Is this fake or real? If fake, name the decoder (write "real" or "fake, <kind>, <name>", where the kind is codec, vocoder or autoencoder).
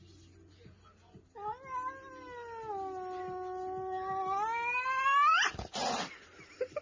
real